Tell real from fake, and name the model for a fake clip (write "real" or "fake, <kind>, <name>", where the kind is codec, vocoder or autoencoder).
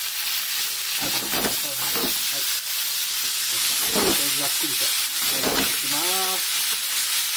real